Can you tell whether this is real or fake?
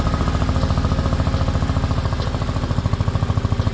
real